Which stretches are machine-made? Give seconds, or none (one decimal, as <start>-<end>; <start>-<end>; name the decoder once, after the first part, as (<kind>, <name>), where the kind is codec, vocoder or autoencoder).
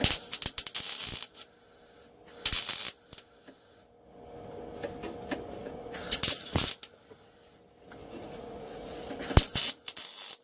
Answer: 5.6-6.6 (vocoder, Vocos); 8.0-9.1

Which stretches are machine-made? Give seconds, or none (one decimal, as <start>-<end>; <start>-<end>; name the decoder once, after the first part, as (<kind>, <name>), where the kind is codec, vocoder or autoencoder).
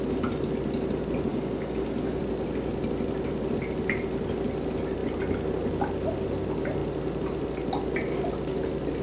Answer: 1.3-2.2 (codec, DAC)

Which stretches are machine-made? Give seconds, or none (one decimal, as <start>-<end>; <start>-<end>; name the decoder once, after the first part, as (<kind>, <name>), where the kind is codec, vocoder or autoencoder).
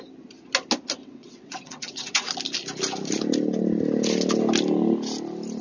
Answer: 1.0-2.3 (vocoder, WaveNeXt)